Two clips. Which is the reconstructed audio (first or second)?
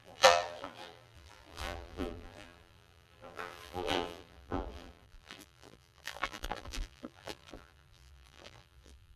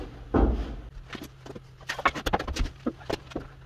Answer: first